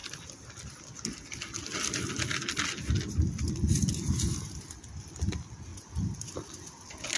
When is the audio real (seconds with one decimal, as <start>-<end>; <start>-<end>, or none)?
0.0-7.2